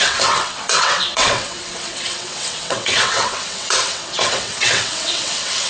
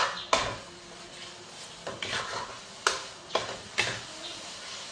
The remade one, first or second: first